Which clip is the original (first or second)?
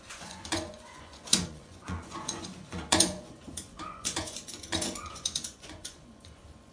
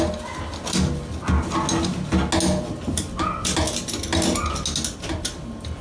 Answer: second